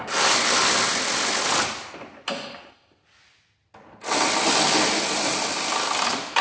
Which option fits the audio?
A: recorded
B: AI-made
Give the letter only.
A